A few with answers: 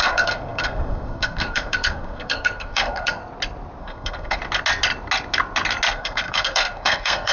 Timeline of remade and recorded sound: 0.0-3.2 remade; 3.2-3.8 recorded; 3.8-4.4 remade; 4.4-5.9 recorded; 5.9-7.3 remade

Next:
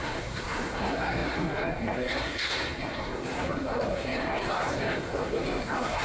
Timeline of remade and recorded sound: 0.0-6.0 remade